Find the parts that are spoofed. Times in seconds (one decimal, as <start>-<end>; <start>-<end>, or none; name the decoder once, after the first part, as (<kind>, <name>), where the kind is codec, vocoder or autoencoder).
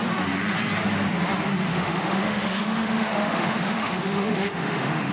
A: 1.7-5.1 (autoencoder, DAC-VAE)